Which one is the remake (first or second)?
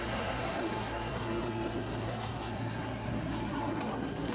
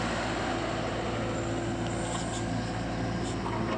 first